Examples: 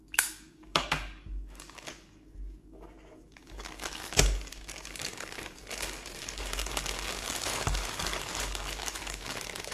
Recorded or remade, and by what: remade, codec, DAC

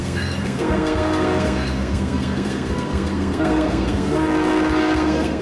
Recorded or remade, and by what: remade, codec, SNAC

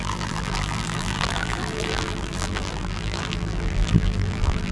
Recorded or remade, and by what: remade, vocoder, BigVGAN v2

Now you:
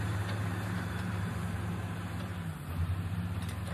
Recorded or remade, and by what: remade, vocoder, BigVGAN v2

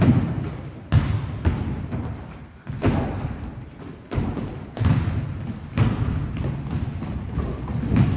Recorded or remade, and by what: recorded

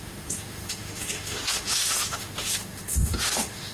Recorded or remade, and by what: remade, autoencoder, DAC-VAE